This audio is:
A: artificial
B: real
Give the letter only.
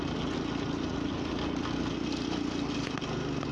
B